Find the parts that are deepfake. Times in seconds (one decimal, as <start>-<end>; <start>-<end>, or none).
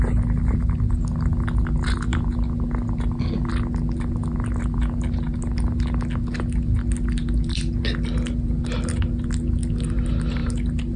none